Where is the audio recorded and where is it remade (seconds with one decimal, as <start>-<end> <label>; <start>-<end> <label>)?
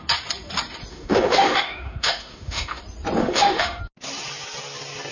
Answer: 0.0-0.9 recorded; 0.9-2.8 remade; 2.8-3.2 recorded; 3.2-3.8 remade; 3.8-5.1 recorded